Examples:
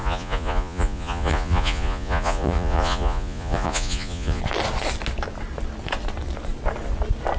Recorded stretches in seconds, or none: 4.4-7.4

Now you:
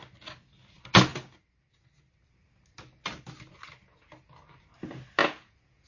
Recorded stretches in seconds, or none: 0.0-5.2

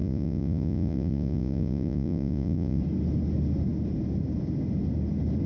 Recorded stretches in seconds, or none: 2.8-5.5